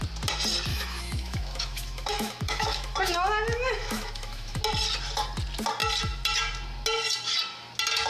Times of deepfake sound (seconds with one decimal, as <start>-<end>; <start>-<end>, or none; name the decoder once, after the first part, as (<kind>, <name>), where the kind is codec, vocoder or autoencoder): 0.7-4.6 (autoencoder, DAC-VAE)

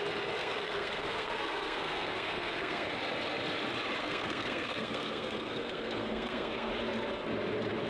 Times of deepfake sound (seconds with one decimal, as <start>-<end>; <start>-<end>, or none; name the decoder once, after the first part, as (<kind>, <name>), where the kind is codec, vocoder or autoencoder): 0.4-2.9 (codec, SNAC); 4.0-6.7

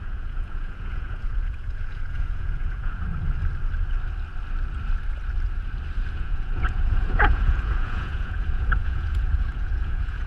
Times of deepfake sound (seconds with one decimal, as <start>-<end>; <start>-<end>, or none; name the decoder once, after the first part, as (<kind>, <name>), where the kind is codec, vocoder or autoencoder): 0.0-3.0 (vocoder, Vocos); 6.1-10.3